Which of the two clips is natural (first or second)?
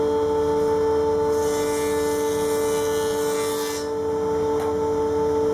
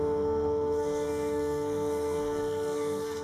first